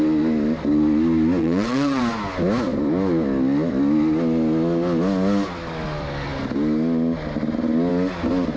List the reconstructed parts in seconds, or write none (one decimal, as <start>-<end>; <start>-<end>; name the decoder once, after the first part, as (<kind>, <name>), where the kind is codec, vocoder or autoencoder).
1.4-2.0 (vocoder, WaveNeXt)